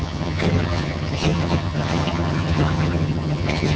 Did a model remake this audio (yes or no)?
yes